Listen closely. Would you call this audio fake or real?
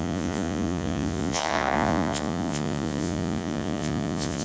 fake